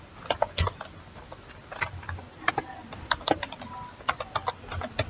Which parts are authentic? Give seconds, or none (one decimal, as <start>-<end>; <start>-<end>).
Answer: 0.0-5.1